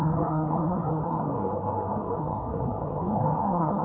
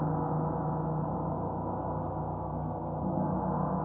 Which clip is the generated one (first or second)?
first